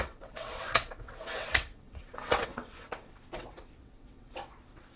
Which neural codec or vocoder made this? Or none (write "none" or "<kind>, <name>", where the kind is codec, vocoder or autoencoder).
vocoder, WaveNeXt